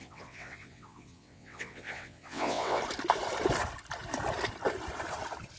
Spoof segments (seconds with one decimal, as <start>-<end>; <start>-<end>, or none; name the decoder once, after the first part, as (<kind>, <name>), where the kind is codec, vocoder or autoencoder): 0.0-2.8 (vocoder, WaveNeXt)